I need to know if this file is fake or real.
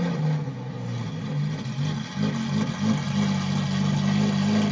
real